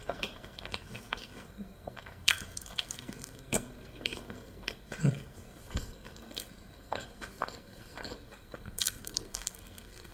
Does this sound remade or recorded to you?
remade